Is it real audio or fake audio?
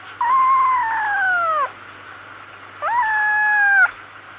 real